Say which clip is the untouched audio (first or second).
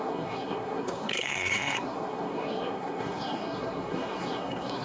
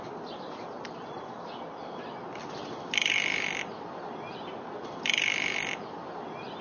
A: second